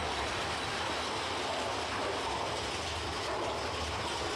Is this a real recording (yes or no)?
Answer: yes